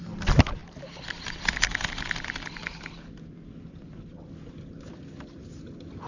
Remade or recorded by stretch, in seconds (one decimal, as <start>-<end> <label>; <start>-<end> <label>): 0.0-6.1 recorded